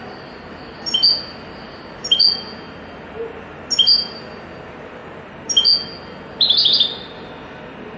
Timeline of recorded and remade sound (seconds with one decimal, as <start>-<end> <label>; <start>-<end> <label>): 0.0-8.0 recorded